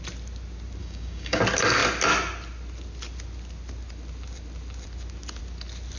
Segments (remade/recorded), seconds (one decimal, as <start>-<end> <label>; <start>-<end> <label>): 0.0-0.8 recorded; 0.8-1.4 remade; 1.4-6.0 recorded